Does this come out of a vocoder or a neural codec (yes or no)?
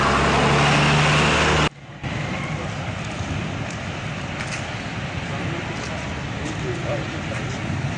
no